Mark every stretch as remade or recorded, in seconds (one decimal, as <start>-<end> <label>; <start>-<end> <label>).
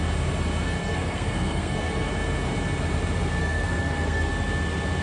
0.0-0.8 recorded; 0.8-2.1 remade; 2.1-3.4 recorded; 3.4-4.3 remade; 4.3-5.0 recorded